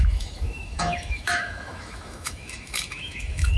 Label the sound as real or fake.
fake